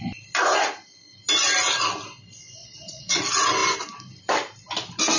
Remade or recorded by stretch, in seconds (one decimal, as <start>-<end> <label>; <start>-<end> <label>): 0.0-2.6 recorded; 2.6-3.2 remade; 3.2-5.2 recorded